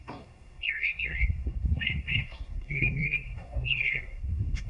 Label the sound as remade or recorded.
remade